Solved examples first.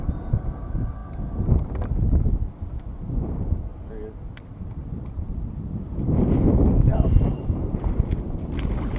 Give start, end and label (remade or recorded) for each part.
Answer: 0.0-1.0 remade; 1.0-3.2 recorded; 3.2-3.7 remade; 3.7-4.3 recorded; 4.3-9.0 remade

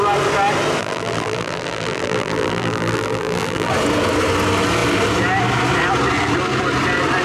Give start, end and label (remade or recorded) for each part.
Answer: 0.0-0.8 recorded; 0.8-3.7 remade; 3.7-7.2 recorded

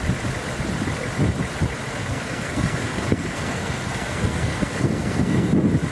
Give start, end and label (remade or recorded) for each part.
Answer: 0.0-2.0 recorded; 2.0-5.5 remade; 5.5-5.9 recorded